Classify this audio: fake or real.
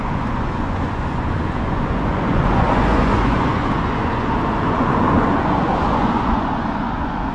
fake